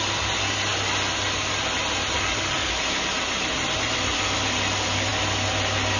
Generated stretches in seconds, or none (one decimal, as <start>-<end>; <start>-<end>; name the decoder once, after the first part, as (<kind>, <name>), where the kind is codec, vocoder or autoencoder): none